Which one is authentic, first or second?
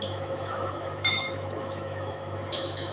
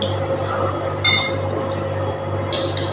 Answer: second